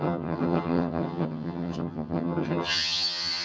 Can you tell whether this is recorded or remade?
remade